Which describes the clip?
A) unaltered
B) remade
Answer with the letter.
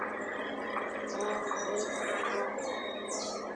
A